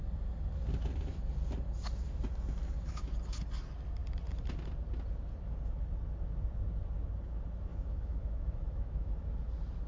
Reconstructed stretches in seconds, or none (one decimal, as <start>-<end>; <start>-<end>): 7.7-9.1